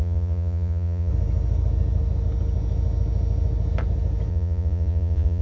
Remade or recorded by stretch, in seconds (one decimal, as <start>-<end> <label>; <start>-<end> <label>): 0.0-1.1 remade; 1.1-4.3 recorded; 4.3-5.4 remade